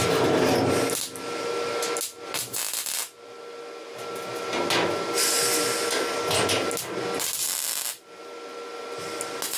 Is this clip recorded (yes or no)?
yes